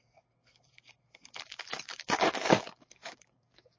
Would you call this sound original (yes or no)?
no